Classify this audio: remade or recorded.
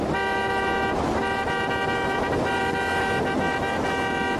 recorded